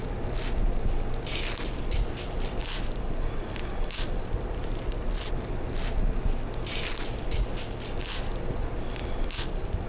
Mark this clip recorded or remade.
recorded